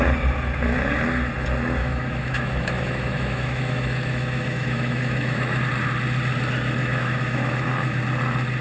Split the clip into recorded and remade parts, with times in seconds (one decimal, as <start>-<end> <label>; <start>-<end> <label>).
0.0-1.8 recorded; 1.8-5.6 remade; 5.6-6.8 recorded; 6.8-8.0 remade; 8.0-8.6 recorded